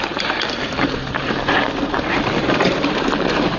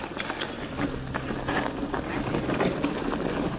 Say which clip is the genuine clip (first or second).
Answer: second